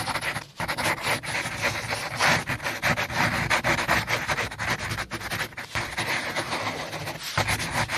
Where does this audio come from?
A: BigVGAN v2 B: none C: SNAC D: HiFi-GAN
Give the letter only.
B